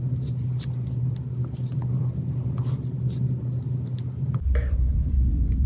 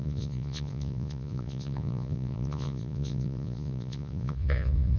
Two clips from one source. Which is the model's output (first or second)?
second